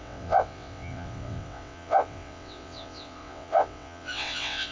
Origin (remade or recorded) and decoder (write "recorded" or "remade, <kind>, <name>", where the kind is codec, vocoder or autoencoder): remade, vocoder, WaveNeXt